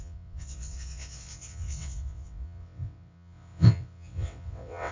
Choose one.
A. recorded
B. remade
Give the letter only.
B